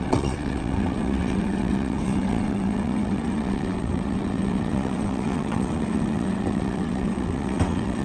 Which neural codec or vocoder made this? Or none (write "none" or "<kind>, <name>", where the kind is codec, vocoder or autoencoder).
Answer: vocoder, WaveNeXt